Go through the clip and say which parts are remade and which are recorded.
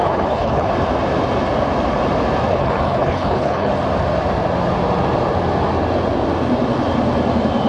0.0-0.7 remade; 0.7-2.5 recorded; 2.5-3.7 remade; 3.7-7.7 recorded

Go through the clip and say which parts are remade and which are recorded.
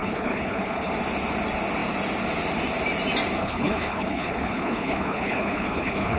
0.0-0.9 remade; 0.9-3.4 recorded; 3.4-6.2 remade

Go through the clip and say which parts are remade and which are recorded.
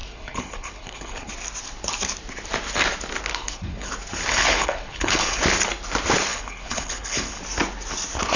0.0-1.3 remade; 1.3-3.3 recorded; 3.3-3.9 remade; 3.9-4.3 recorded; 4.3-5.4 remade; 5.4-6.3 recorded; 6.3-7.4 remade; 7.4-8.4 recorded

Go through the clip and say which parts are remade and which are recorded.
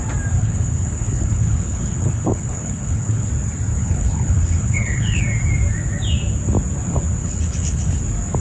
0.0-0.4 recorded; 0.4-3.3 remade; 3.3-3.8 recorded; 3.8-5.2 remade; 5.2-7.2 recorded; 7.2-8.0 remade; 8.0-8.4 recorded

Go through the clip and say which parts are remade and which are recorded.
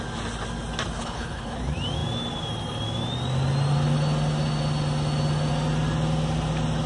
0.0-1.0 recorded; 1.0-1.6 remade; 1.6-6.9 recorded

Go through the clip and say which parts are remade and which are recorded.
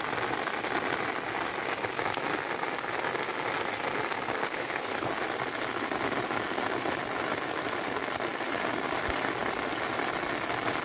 0.0-4.4 recorded; 4.4-5.1 remade; 5.1-10.8 recorded